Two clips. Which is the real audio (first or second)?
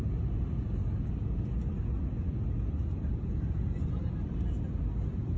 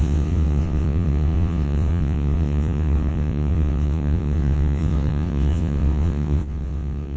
first